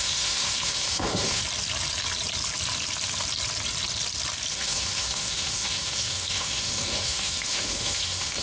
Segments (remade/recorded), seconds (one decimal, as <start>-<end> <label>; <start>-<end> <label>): 0.0-1.4 remade; 1.4-4.5 recorded; 4.5-8.4 remade